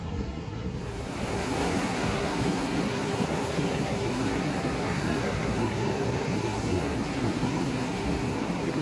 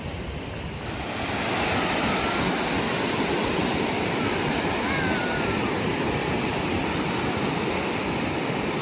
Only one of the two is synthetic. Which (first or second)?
first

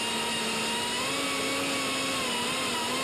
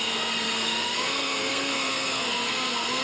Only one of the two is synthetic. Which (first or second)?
second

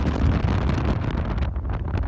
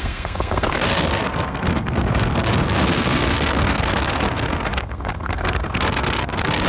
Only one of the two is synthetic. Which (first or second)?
second